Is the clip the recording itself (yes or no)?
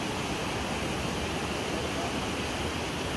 yes